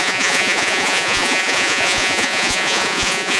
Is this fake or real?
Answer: fake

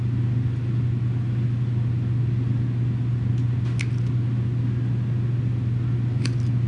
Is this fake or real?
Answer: real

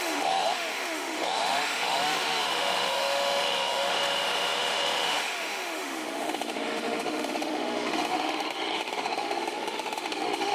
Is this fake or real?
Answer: fake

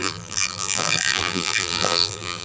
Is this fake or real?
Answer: fake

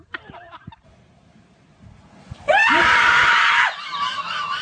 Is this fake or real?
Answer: fake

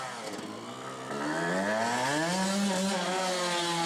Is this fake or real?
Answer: real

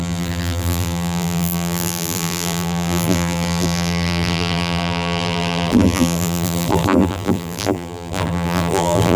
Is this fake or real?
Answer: fake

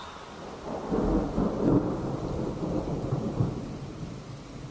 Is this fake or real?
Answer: real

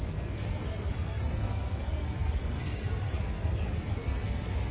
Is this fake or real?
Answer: fake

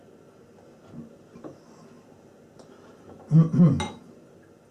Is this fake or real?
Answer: real